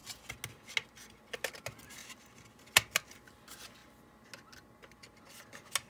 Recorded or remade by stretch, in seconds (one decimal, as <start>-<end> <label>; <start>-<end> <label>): 0.0-5.9 recorded